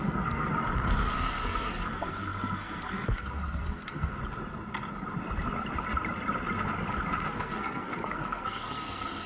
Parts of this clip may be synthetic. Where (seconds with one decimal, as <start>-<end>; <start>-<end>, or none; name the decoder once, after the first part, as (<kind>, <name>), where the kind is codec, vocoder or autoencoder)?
0.0-0.5 (codec, SNAC); 1.1-4.2; 7.3-9.3